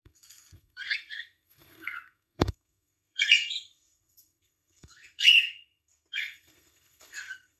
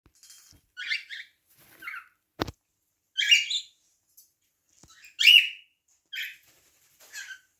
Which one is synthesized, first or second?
first